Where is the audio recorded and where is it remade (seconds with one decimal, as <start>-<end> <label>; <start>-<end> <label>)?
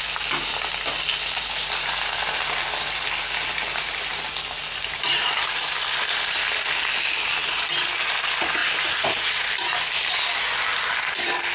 0.0-11.5 recorded